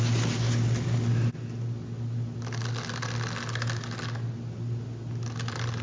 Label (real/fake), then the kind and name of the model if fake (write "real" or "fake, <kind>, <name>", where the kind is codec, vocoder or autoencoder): real